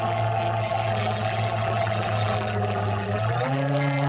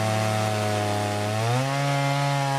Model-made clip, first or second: first